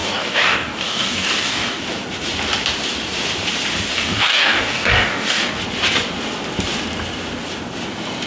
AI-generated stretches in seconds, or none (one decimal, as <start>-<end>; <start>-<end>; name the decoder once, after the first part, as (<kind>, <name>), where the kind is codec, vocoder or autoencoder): 0.0-1.8 (codec, DAC); 3.9-5.6